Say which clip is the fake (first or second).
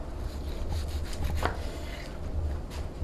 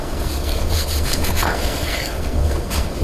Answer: second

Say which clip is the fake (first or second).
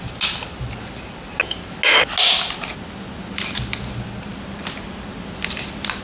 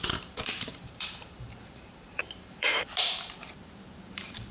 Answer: second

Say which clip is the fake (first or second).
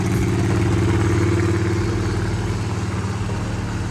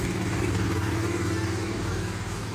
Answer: second